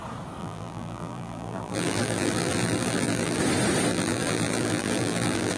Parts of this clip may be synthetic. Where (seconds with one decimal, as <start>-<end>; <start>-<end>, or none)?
0.4-3.4; 3.9-5.6